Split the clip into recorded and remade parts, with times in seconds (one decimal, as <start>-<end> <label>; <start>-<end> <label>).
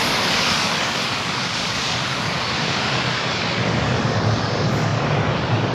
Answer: 0.0-5.7 remade